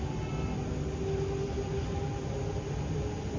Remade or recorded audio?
recorded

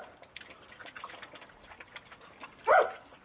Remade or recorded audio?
recorded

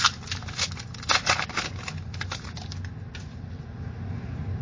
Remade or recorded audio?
recorded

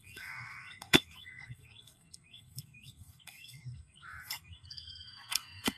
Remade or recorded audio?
remade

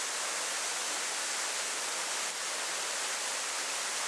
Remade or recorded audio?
recorded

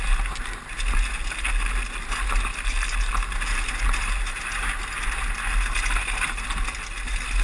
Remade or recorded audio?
recorded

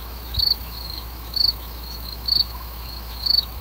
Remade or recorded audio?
remade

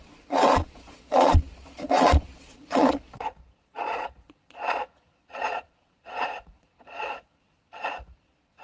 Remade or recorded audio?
remade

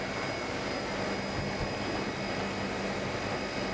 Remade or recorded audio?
recorded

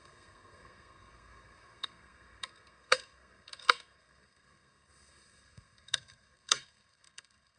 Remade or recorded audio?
remade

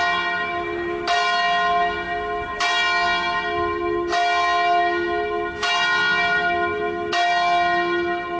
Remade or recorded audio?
recorded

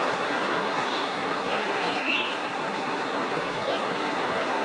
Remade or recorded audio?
remade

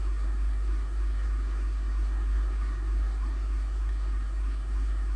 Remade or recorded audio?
remade